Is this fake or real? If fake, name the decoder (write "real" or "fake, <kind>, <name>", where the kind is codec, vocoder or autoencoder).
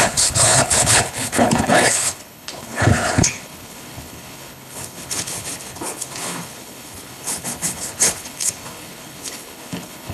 fake, codec, HILCodec